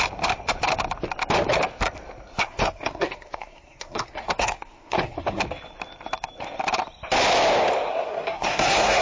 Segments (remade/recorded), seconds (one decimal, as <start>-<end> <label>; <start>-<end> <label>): 0.0-2.4 recorded; 2.4-5.4 remade; 5.4-7.9 recorded; 7.9-9.0 remade